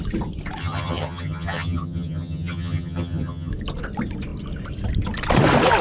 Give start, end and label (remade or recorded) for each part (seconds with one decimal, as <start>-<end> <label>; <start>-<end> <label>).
0.0-0.6 recorded; 0.6-3.5 remade; 3.5-5.8 recorded